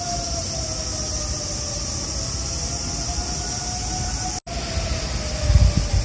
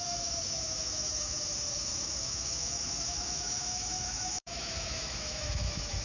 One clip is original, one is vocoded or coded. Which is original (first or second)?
first